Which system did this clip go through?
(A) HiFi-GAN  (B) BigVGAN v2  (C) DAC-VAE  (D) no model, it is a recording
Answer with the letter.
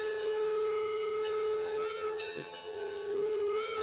A